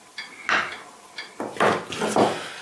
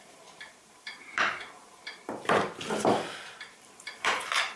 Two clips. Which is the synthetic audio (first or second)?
second